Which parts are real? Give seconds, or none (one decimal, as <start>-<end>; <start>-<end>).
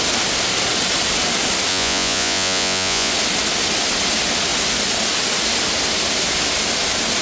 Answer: 0.0-1.7; 3.1-7.2